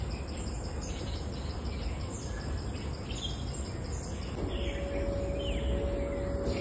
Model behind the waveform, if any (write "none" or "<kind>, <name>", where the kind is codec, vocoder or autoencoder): none